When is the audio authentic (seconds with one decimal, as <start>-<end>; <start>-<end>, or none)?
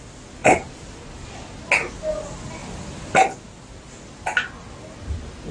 0.0-0.4; 1.0-2.6; 3.2-5.5